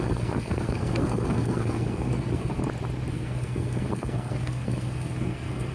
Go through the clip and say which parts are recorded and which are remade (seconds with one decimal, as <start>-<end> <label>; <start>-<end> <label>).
0.0-2.6 remade; 2.6-3.1 recorded; 3.1-5.7 remade